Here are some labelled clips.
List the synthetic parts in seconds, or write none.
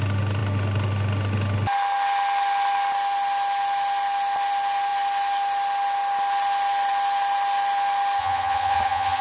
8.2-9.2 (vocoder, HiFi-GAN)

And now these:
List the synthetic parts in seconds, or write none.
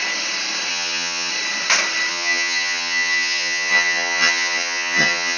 0.7-1.3 (vocoder, HiFi-GAN); 2.1-5.4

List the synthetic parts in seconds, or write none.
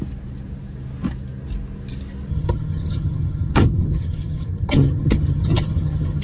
2.3-6.2 (vocoder, HiFi-GAN)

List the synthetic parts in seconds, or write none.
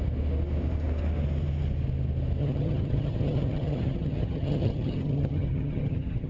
2.4-6.3 (vocoder, HiFi-GAN)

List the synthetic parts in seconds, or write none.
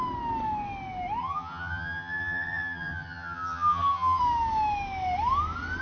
1.2-4.2 (vocoder, HiFi-GAN)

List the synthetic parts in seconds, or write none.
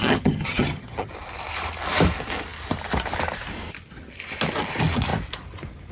0.0-1.1 (vocoder, HiFi-GAN)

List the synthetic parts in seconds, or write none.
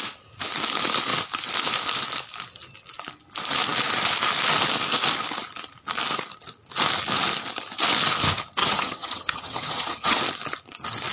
8.6-10.2 (vocoder, HiFi-GAN)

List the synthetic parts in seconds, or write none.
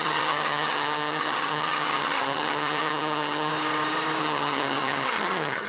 0.0-3.5 (vocoder, HiFi-GAN); 4.2-5.7